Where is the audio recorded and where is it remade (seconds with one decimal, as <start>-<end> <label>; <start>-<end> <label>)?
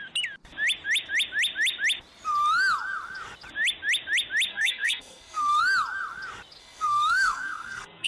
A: 0.0-4.5 recorded; 4.5-5.6 remade; 5.6-6.6 recorded; 6.6-8.1 remade